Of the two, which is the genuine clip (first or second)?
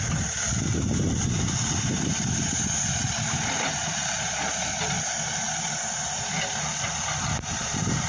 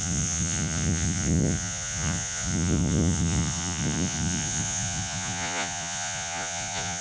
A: first